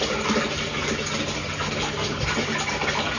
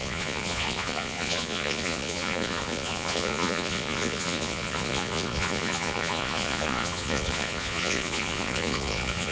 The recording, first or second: first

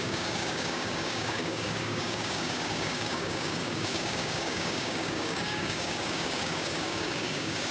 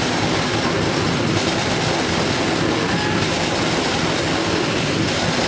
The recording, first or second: second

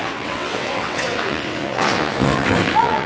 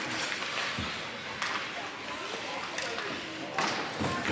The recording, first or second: second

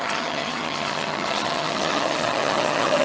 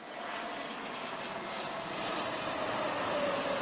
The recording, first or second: second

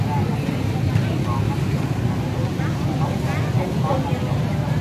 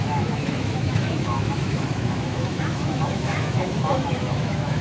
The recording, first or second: first